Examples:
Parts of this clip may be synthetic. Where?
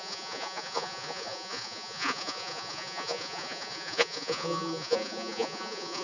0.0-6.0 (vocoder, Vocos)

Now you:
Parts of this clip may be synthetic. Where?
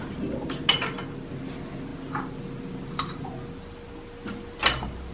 none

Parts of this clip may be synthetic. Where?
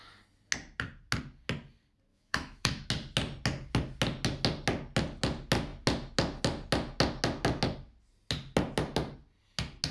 2.1-2.9 (autoencoder, DAC-VAE)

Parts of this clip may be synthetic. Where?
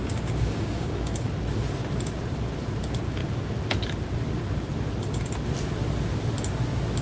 0.0-1.3 (codec, DAC)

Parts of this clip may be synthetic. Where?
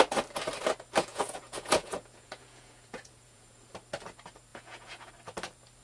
1.1-3.7 (vocoder, Vocos); 4.5-5.1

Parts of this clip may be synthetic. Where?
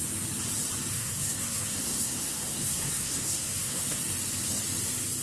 0.9-4.0 (codec, SNAC)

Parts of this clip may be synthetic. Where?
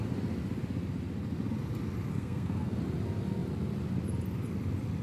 2.1-2.8 (codec, SNAC)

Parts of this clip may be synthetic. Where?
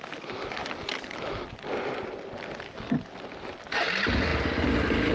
none